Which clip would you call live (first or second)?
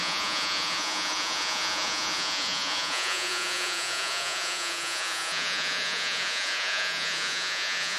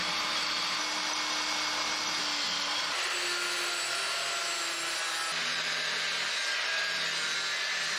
second